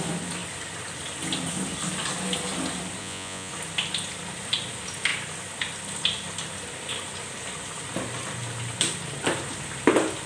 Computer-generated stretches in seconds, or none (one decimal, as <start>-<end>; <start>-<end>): 3.0-3.5

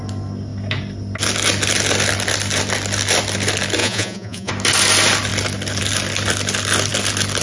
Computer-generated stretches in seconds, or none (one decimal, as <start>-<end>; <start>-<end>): 3.8-4.5

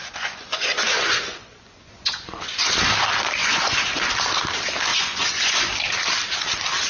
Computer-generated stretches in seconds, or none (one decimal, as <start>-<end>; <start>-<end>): 0.0-2.7; 3.4-4.1; 4.9-5.7

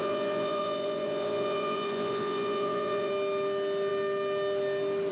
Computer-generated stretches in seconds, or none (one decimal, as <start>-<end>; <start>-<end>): 0.0-3.1